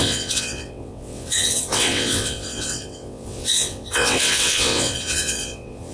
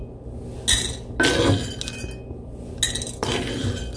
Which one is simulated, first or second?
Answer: first